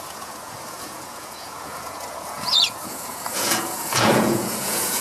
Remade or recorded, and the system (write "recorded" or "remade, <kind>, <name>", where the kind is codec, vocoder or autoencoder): remade, vocoder, Vocos